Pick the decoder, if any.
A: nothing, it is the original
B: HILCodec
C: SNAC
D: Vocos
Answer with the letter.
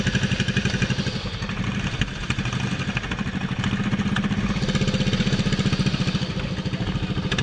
A